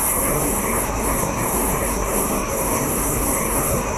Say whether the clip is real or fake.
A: fake